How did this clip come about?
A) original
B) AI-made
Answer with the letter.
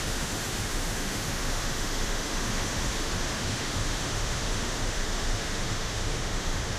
B